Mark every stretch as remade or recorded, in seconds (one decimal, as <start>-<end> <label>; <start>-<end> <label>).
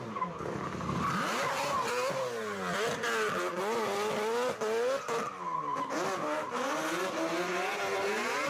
0.0-8.5 recorded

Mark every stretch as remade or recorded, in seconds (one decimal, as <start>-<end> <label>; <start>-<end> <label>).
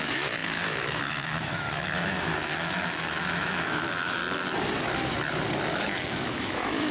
0.0-4.2 remade; 4.2-5.8 recorded; 5.8-6.9 remade